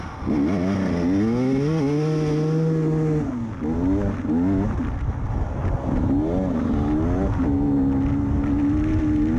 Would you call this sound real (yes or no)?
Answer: yes